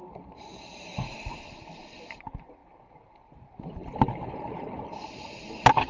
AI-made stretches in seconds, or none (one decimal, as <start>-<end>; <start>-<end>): none